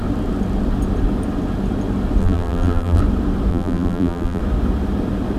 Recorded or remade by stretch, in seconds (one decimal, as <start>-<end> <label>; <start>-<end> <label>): 0.0-2.2 recorded; 2.2-3.0 remade; 3.0-3.5 recorded; 3.5-4.4 remade; 4.4-5.4 recorded